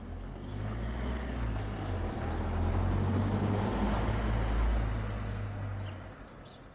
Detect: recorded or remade recorded